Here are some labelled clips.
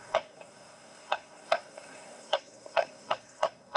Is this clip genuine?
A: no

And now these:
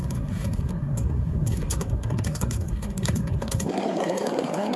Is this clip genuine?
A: no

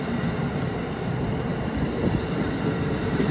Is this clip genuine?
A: yes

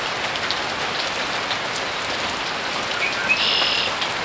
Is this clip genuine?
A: yes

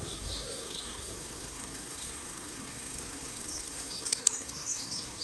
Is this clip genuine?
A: no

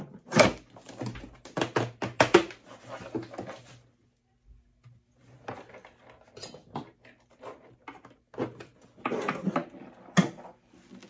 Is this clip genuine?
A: yes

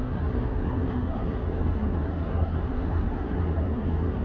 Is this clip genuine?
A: no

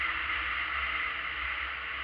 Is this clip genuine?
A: yes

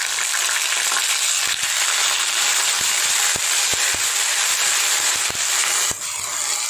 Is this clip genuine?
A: yes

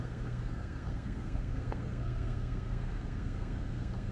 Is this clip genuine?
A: no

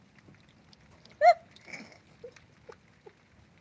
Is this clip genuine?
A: yes